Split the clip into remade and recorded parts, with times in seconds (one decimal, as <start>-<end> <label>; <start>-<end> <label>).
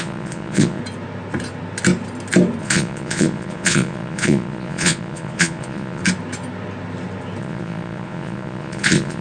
0.0-0.8 remade; 0.8-2.6 recorded; 2.6-6.0 remade; 6.0-7.4 recorded; 7.4-9.2 remade